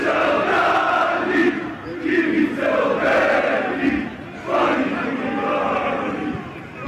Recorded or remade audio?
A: remade